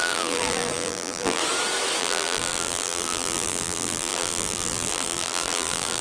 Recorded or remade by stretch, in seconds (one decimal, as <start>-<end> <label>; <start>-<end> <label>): 0.0-1.4 remade; 1.4-2.0 recorded; 2.0-6.0 remade